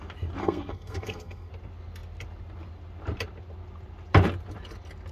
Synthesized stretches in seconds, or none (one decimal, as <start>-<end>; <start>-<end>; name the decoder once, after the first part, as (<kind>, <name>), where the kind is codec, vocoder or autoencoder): 0.4-1.5 (codec, SNAC)